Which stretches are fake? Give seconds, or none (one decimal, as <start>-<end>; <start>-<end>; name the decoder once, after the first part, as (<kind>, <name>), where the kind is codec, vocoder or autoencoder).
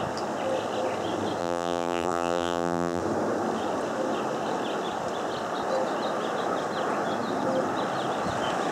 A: 1.4-3.0 (vocoder, BigVGAN v2)